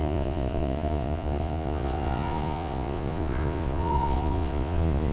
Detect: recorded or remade remade